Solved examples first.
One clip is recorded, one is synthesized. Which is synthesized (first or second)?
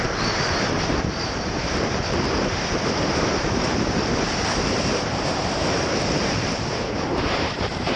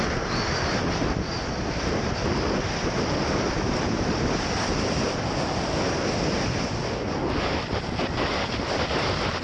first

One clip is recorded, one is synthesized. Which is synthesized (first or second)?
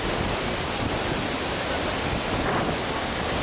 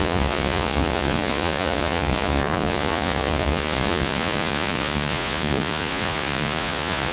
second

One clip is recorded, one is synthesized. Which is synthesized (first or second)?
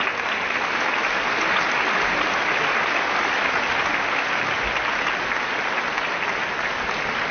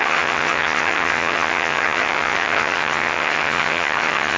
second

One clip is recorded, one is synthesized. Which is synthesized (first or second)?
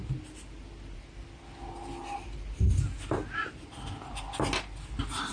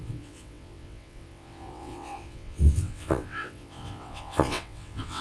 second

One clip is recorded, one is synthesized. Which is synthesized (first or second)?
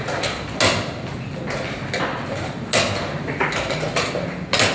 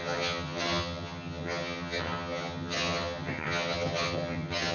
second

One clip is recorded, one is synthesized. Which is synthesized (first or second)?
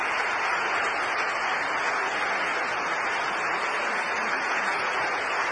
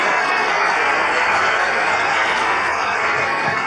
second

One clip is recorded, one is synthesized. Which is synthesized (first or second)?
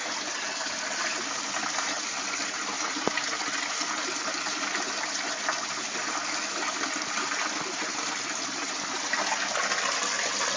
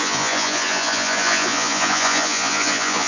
second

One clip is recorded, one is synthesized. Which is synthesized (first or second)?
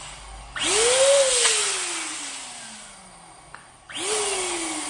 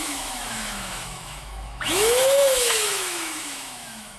second